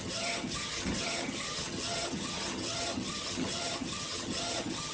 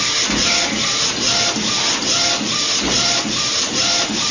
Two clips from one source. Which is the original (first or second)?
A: second